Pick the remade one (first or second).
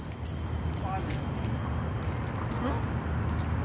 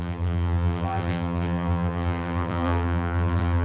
second